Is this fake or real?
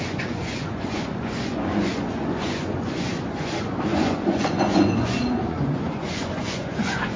fake